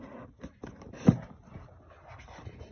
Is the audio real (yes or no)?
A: yes